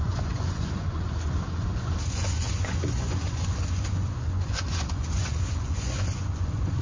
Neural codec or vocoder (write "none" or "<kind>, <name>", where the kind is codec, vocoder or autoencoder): vocoder, Vocos